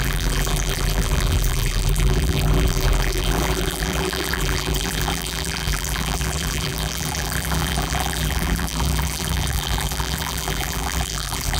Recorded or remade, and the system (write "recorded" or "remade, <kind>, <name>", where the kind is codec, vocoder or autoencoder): remade, vocoder, BigVGAN v2